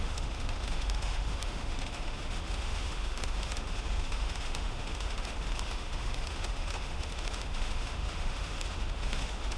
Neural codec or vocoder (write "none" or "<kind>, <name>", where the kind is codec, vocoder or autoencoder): autoencoder, DAC-VAE